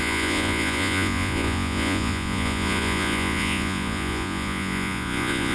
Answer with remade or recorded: remade